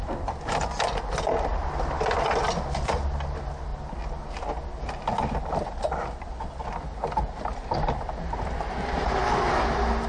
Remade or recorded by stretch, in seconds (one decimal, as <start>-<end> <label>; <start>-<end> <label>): 0.0-10.1 recorded